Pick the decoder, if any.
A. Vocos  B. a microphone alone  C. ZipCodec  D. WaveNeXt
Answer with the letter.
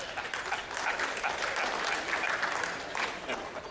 B